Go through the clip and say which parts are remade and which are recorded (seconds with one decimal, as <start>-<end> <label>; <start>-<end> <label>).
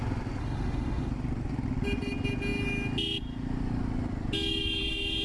0.0-0.4 recorded; 0.4-1.1 remade; 1.1-5.2 recorded